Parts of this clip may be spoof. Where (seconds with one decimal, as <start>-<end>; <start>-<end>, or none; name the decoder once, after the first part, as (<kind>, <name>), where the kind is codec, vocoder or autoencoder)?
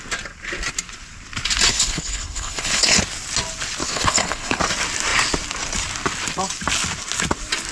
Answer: 1.7-3.0 (codec, HILCodec); 3.8-4.6